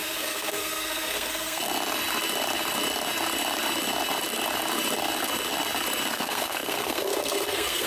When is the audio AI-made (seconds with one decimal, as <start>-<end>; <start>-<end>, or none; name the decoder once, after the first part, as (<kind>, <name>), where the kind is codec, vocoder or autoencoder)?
0.0-1.6 (codec, SNAC); 6.1-7.9